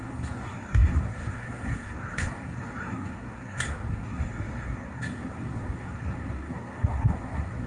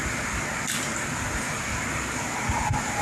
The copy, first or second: first